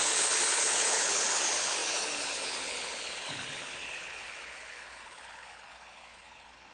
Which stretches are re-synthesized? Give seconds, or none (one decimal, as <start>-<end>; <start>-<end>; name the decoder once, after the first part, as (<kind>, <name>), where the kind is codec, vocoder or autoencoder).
0.0-6.7 (codec, HILCodec)